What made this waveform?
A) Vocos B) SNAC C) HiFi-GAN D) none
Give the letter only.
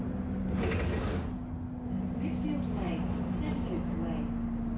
D